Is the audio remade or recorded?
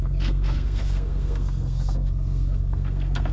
remade